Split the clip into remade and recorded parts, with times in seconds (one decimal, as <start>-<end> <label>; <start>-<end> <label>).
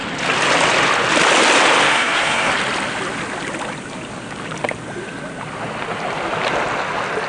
0.0-1.9 recorded; 1.9-2.5 remade; 2.5-7.3 recorded